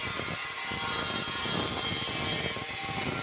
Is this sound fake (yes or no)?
no